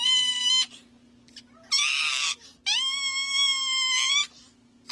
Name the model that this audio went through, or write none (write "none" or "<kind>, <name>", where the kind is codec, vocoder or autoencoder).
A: none